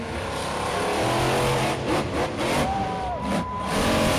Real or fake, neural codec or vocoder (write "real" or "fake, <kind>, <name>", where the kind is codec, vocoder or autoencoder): fake, vocoder, BigVGAN v2